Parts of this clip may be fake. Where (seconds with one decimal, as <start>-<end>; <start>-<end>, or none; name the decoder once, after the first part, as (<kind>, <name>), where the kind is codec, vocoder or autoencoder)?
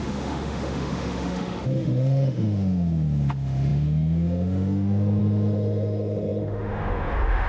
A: 0.0-7.5 (autoencoder, DAC-VAE)